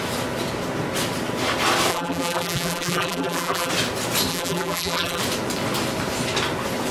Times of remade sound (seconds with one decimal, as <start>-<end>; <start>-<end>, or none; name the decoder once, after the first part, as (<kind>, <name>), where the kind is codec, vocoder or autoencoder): 1.9-3.7 (vocoder, BigVGAN v2); 4.3-5.2